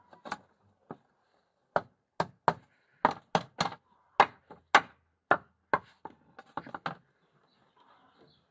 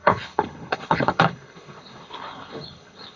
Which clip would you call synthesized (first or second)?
second